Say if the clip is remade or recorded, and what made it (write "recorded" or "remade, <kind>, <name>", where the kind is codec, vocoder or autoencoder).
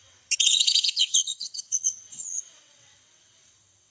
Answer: remade, vocoder, WaveNeXt